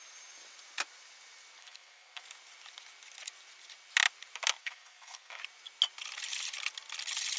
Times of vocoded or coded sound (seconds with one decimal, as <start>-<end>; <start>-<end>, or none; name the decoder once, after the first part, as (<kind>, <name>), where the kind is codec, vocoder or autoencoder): 1.6-2.2 (codec, SNAC); 4.6-5.4